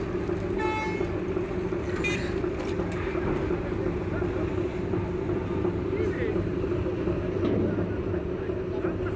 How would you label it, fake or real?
real